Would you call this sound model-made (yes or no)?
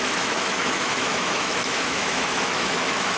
yes